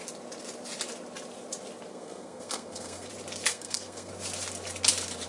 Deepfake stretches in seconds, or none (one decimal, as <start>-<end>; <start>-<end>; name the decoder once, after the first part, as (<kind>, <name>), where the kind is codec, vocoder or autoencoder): 1.9-3.1 (codec, SNAC); 3.5-4.1